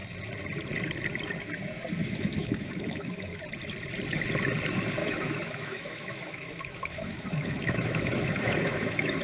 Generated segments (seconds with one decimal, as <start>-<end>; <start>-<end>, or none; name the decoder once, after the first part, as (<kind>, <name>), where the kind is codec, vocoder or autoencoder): 2.0-3.4 (autoencoder, DAC-VAE); 5.0-9.2